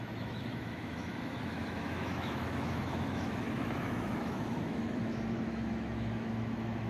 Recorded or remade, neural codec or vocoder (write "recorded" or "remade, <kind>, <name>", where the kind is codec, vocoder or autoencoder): remade, autoencoder, DAC-VAE